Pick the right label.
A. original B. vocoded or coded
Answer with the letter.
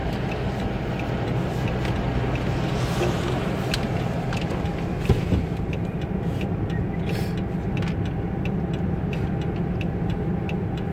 A